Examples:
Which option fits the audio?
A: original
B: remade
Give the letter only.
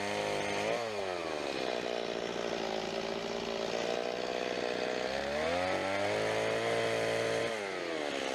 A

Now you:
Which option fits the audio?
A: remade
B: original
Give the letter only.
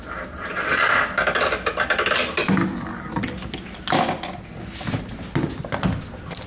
B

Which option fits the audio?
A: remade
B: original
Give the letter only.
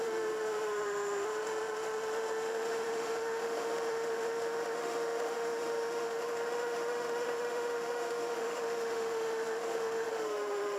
A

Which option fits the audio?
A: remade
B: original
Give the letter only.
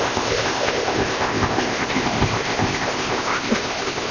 A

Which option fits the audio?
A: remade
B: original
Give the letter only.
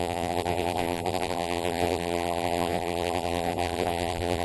A